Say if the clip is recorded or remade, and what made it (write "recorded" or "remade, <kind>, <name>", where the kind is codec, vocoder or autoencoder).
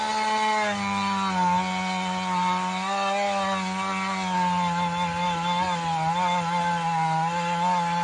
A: recorded